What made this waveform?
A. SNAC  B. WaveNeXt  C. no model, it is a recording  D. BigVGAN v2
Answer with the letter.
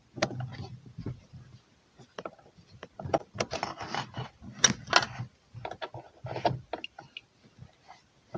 C